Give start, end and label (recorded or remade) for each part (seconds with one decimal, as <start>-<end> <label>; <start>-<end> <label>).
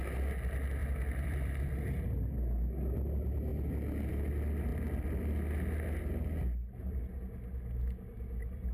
0.0-0.8 recorded; 0.8-1.7 remade; 1.7-4.7 recorded; 4.7-5.2 remade; 5.2-8.7 recorded